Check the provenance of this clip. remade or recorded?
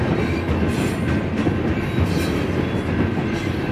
recorded